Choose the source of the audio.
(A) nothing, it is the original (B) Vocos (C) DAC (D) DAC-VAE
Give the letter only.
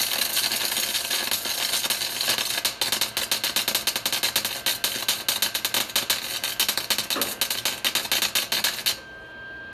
A